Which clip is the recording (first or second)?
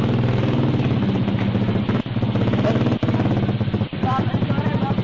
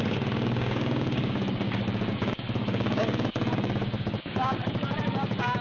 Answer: first